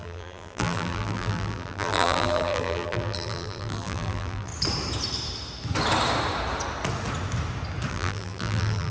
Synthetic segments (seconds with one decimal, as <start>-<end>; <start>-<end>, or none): 0.0-4.5; 7.9-8.9